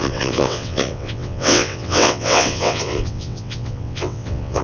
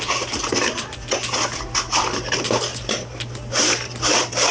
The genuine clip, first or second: second